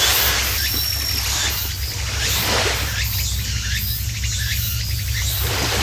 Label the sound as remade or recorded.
recorded